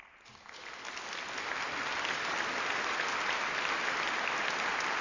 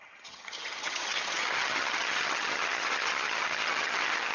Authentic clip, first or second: first